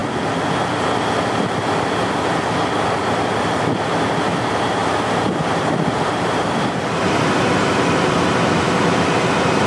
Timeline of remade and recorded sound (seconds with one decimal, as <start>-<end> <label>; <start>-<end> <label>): 0.0-4.8 recorded; 4.8-8.2 remade; 8.2-9.7 recorded